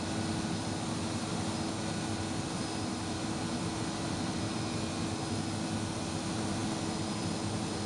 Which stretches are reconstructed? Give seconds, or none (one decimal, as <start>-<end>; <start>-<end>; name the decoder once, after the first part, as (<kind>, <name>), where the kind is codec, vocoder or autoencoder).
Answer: none